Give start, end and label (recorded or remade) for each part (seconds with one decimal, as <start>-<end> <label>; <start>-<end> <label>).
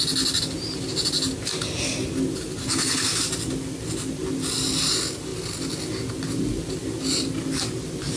0.0-2.6 recorded; 2.6-3.2 remade; 3.2-8.2 recorded